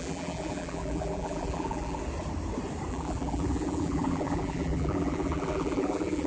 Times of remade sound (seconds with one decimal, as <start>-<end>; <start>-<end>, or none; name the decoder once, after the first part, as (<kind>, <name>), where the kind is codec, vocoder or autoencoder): 0.0-2.0 (vocoder, BigVGAN v2); 2.9-6.3